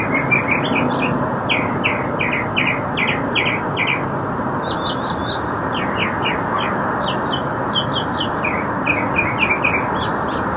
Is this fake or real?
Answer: real